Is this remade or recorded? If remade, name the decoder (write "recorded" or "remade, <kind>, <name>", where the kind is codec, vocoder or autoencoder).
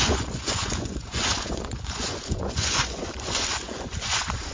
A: remade, vocoder, Vocos